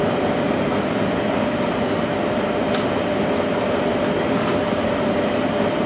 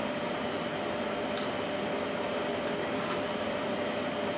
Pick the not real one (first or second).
first